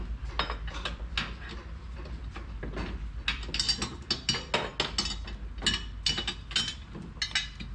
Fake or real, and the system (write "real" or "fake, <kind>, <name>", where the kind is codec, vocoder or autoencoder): real